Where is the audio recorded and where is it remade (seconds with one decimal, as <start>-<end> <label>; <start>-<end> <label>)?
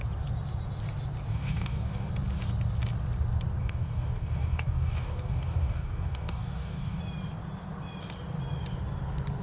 0.0-1.3 recorded; 1.3-2.1 remade; 2.1-3.6 recorded; 3.6-7.0 remade; 7.0-9.4 recorded